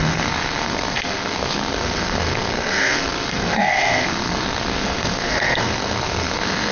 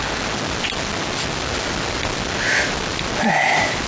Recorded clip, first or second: second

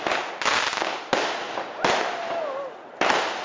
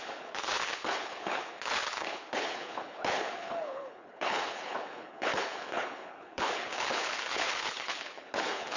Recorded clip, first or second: first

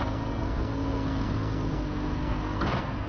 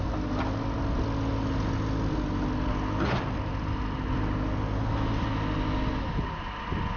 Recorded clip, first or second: second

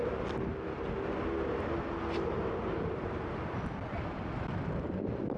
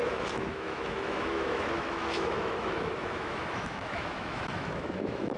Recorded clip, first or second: first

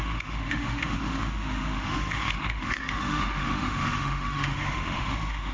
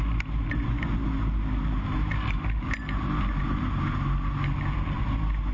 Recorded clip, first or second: second